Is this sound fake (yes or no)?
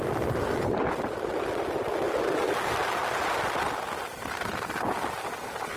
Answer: no